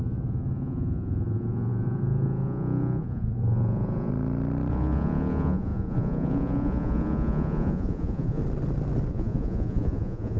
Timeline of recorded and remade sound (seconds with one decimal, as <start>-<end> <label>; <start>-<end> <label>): 0.0-4.1 remade; 4.1-4.7 recorded; 4.7-8.4 remade; 8.4-9.1 recorded; 9.1-10.4 remade